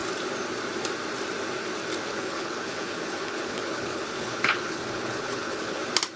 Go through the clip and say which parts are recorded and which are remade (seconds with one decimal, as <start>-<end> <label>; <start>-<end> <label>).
0.0-2.1 recorded; 2.1-5.8 remade; 5.8-6.2 recorded